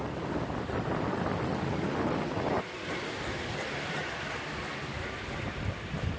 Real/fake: real